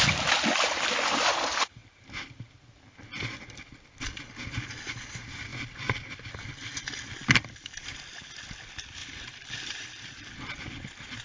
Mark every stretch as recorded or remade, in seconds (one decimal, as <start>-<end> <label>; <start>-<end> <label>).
0.0-5.5 recorded; 5.5-8.0 remade; 8.0-9.0 recorded; 9.0-10.4 remade; 10.4-11.2 recorded

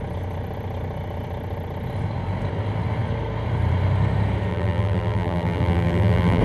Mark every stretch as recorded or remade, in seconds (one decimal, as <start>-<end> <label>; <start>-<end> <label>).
0.0-4.5 recorded; 4.5-6.4 remade

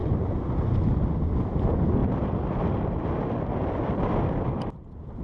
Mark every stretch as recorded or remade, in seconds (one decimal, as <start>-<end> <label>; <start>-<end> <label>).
0.0-2.0 recorded; 2.0-5.2 remade

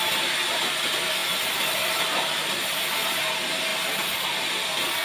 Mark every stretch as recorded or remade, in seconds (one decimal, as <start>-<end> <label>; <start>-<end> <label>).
0.0-1.2 recorded; 1.2-3.1 remade; 3.1-3.7 recorded; 3.7-4.5 remade; 4.5-5.0 recorded